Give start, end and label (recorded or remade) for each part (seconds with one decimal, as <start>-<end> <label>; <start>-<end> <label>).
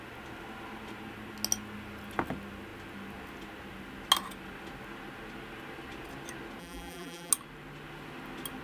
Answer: 0.0-6.6 recorded; 6.6-7.3 remade; 7.3-8.6 recorded